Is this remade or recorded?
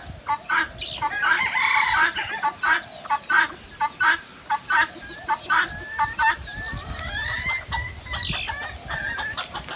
recorded